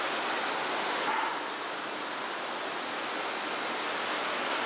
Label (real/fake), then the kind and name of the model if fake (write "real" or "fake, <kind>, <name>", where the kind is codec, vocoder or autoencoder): real